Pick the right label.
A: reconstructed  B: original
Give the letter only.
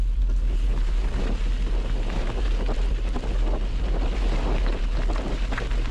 B